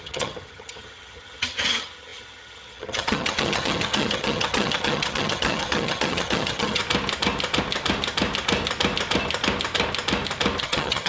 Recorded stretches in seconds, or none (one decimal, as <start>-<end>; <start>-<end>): 6.8-10.6